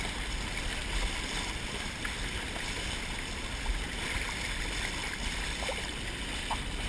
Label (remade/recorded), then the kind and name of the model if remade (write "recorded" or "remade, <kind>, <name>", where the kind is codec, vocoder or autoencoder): recorded